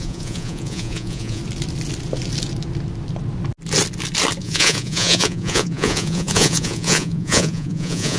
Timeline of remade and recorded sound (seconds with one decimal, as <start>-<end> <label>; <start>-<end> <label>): 0.0-1.4 remade; 1.4-4.4 recorded; 4.4-8.2 remade